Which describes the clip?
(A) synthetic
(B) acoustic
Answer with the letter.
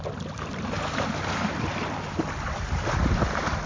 A